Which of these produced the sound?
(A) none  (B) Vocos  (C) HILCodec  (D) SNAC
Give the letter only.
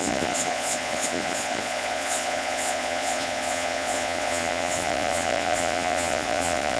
B